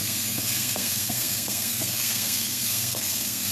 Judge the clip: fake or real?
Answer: fake